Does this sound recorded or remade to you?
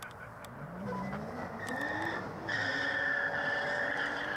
remade